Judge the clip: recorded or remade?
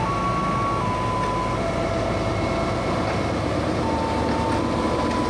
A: recorded